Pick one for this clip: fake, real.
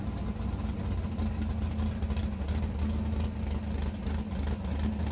real